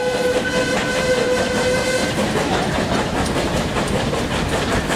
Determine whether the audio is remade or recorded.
recorded